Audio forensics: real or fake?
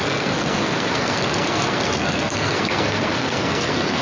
fake